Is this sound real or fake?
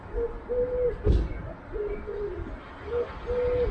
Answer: real